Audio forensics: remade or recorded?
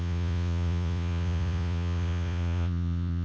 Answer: remade